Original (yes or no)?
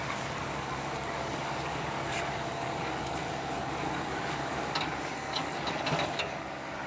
no